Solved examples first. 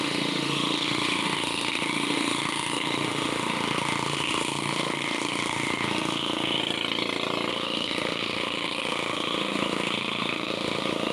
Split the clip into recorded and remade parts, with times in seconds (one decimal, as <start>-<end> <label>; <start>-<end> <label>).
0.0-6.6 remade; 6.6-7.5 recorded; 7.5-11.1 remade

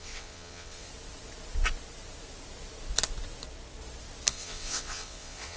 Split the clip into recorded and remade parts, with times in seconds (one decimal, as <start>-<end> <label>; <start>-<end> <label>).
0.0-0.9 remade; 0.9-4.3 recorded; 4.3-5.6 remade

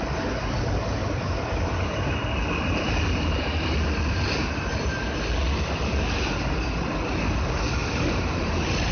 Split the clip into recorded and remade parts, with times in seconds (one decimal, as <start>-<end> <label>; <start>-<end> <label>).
0.0-8.9 recorded

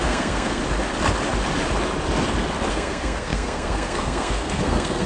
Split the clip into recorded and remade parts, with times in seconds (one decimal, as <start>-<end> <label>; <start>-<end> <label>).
0.0-0.6 remade; 0.6-2.7 recorded; 2.7-5.1 remade

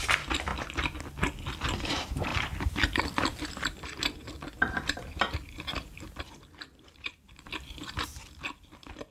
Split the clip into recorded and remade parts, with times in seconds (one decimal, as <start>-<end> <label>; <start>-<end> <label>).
0.0-0.5 remade; 0.5-1.8 recorded; 1.8-9.1 remade